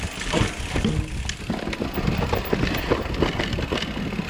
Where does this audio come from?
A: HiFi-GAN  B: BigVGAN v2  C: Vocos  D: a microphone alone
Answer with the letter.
D